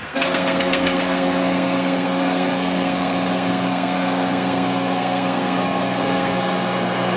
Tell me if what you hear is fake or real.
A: fake